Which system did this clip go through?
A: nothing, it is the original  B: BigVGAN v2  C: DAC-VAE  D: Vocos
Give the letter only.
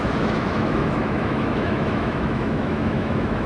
C